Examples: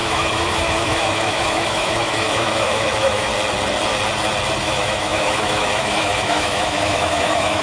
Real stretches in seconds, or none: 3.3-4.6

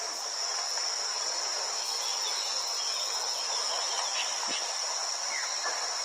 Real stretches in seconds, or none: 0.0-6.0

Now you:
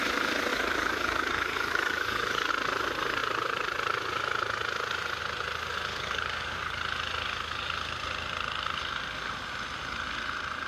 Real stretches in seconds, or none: 0.0-0.5; 2.5-5.9; 6.8-10.7